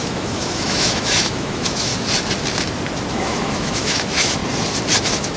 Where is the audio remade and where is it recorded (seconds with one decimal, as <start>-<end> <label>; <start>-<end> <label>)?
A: 0.0-1.9 remade; 1.9-3.1 recorded; 3.1-4.4 remade; 4.4-5.0 recorded; 5.0-5.4 remade